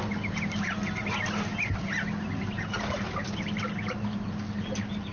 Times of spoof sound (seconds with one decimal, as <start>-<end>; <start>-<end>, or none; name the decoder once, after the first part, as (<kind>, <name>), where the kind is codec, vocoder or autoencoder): none